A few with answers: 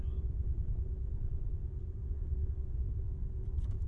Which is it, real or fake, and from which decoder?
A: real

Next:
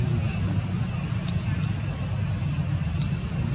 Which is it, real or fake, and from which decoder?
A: real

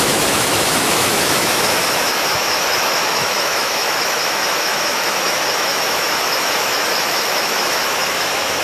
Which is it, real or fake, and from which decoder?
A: fake, autoencoder, DAC-VAE